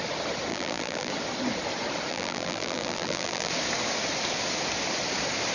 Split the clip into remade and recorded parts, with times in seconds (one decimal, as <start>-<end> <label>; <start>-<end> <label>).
0.0-0.5 recorded; 0.5-1.1 remade; 1.1-2.1 recorded; 2.1-3.5 remade; 3.5-5.5 recorded

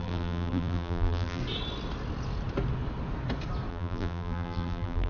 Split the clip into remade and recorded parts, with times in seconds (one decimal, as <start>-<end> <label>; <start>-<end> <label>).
0.0-1.4 remade; 1.4-3.7 recorded; 3.7-5.1 remade

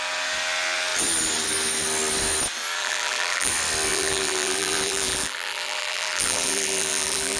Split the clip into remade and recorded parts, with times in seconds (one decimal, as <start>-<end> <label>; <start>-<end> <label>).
0.0-2.8 recorded; 2.8-3.5 remade; 3.5-3.9 recorded; 3.9-7.4 remade

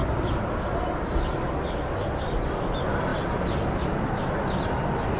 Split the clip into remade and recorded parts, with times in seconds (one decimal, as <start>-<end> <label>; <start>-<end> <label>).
0.0-0.6 remade; 0.6-5.2 recorded